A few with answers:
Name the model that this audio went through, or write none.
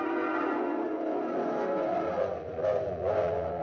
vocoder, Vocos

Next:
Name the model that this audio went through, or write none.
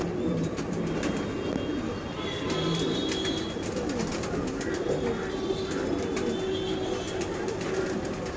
none